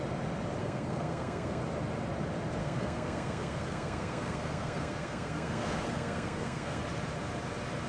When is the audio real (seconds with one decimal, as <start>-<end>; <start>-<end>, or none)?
0.0-0.6; 1.6-2.6; 6.8-7.9